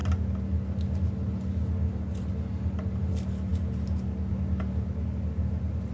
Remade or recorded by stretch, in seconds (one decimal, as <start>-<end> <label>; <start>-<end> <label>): 0.0-5.9 recorded